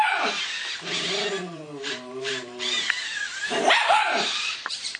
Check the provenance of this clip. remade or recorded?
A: remade